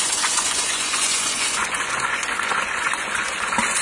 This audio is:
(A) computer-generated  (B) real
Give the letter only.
A